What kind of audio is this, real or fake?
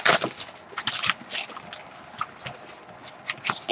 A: real